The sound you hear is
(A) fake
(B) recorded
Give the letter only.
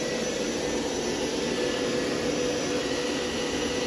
B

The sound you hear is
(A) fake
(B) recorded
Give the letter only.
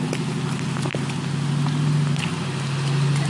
B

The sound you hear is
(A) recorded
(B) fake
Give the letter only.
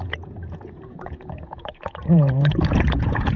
B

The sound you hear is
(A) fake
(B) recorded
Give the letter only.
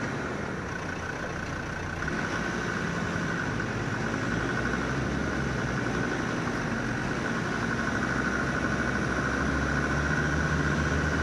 B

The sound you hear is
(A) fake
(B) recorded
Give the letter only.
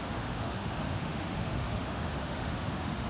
A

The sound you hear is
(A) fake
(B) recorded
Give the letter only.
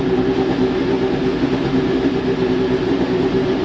B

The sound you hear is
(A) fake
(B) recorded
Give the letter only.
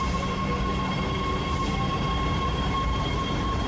A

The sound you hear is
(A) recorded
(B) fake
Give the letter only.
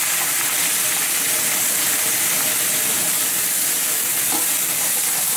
A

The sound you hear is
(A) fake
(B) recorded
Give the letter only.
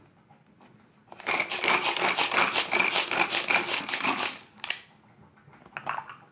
B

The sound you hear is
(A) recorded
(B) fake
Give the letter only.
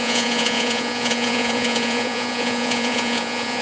B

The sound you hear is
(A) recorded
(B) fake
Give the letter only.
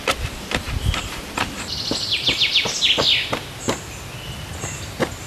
A